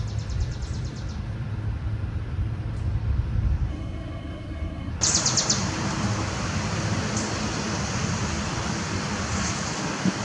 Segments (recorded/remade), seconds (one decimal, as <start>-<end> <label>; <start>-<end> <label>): 0.0-3.7 recorded; 3.7-4.9 remade; 4.9-10.2 recorded

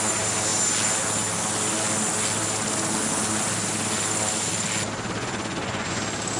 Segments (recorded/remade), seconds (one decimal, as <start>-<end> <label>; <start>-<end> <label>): 0.0-5.2 recorded; 5.2-6.0 remade; 6.0-6.4 recorded

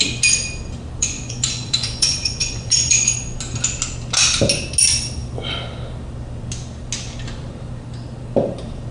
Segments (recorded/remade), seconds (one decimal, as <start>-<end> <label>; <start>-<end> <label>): 0.0-1.0 recorded; 1.0-3.4 remade; 3.4-8.9 recorded

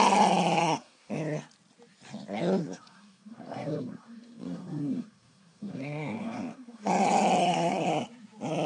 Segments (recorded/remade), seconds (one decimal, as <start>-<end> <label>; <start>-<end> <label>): 0.0-0.6 recorded; 0.6-1.1 remade; 1.1-2.6 recorded; 2.6-6.9 remade; 6.9-7.4 recorded; 7.4-7.9 remade; 7.9-8.7 recorded

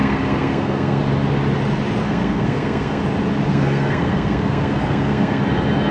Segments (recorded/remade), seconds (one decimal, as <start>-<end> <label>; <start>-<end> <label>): 0.0-1.0 remade; 1.0-2.0 recorded; 2.0-3.0 remade; 3.0-3.5 recorded; 3.5-5.4 remade; 5.4-5.9 recorded

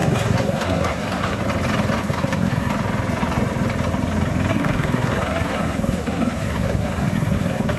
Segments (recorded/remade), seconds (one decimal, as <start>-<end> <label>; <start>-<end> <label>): 0.0-1.4 remade; 1.4-2.0 recorded; 2.0-2.7 remade; 2.7-4.5 recorded; 4.5-7.8 remade